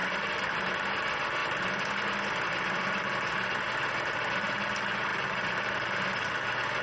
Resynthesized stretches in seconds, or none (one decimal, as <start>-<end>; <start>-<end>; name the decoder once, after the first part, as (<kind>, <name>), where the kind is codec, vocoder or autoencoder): none